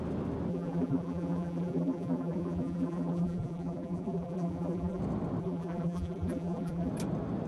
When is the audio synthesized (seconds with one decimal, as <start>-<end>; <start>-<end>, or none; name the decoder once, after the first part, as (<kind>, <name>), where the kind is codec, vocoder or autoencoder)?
0.5-5.0 (vocoder, BigVGAN v2); 5.4-6.9